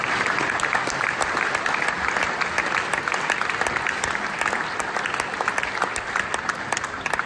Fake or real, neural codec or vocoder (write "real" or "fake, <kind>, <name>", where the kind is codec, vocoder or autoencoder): real